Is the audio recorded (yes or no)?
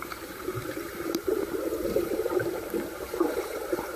no